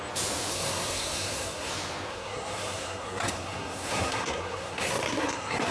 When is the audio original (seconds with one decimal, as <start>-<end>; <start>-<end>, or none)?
0.0-0.5; 1.7-2.1